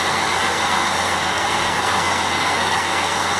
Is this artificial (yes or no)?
yes